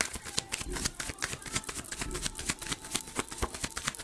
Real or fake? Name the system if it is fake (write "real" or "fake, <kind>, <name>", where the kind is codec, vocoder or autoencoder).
real